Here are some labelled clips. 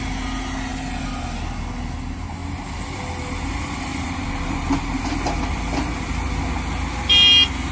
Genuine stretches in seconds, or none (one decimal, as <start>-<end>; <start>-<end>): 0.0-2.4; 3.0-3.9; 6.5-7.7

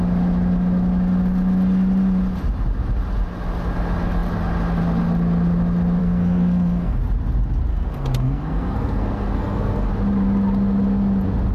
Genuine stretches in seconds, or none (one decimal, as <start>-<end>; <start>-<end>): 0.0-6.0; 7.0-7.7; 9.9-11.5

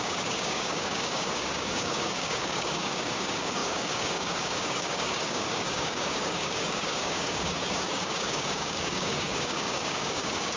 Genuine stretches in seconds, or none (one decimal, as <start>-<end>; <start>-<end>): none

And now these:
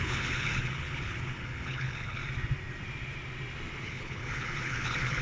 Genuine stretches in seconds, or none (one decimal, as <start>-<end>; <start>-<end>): 2.2-3.8